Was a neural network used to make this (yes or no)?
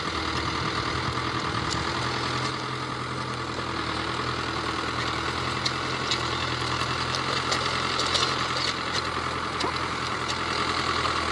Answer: no